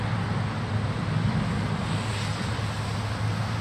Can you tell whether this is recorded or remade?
recorded